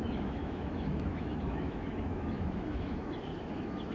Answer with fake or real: fake